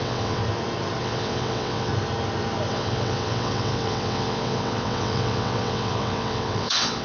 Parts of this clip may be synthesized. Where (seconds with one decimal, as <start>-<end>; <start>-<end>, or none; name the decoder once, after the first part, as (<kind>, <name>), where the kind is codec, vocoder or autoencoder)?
0.0-0.4 (vocoder, WaveNeXt); 1.0-1.9; 2.7-7.0

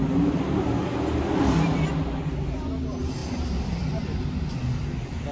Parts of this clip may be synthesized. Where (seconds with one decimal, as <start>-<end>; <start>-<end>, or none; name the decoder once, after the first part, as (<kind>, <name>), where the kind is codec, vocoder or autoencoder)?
3.2-4.0 (vocoder, BigVGAN v2)

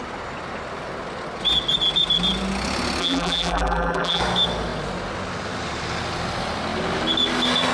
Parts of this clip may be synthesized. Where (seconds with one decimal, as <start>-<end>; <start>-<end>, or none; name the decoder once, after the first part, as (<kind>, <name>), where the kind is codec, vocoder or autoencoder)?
3.0-4.2 (vocoder, BigVGAN v2)

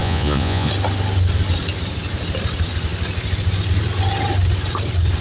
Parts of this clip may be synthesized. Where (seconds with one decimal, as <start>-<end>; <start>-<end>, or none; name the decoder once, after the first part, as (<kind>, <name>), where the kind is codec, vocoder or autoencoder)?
0.0-0.7 (vocoder, Vocos)

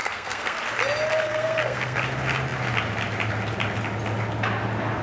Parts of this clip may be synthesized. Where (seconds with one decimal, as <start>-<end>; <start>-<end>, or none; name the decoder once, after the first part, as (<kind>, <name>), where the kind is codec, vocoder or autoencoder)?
0.0-0.6 (codec, SNAC); 1.1-2.0

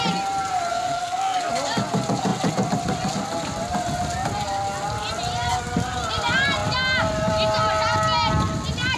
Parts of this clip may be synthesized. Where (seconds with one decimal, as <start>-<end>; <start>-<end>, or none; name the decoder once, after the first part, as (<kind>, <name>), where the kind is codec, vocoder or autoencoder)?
0.7-1.5 (codec, SNAC)

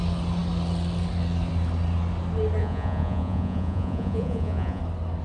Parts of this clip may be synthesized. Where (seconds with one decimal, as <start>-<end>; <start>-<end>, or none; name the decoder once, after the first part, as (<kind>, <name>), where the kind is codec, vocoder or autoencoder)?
2.6-4.8 (vocoder, Vocos)

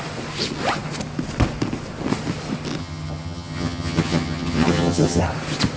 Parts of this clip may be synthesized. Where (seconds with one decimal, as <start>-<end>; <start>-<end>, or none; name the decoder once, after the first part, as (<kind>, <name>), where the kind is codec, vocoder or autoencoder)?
2.8-5.2 (vocoder, HiFi-GAN)